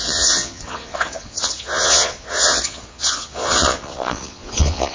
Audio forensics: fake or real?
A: fake